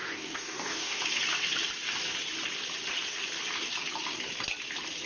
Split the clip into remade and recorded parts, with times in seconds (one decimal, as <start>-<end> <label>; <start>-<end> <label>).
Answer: 0.0-1.0 remade; 1.0-5.1 recorded